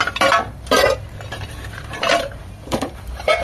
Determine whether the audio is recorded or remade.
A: remade